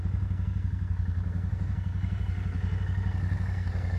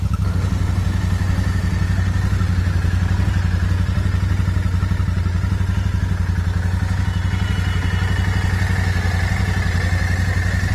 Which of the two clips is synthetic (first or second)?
first